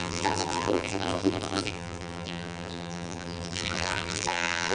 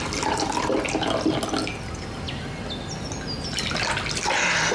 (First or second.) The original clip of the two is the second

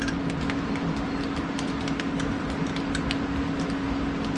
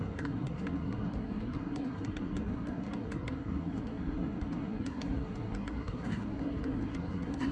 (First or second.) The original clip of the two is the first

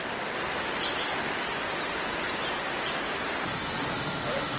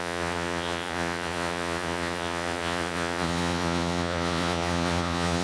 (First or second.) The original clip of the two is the first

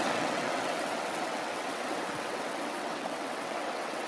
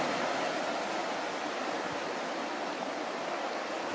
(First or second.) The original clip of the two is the second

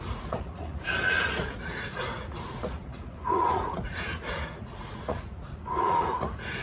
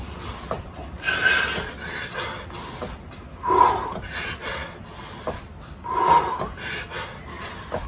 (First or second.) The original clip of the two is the second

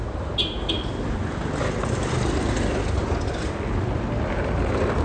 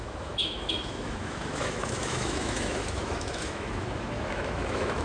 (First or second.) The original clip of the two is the first